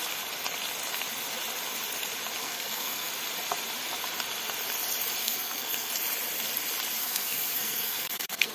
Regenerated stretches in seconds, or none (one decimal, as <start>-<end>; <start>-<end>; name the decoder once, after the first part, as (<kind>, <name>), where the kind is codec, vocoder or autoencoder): 2.4-3.1 (codec, SNAC); 5.2-5.9; 7.0-8.5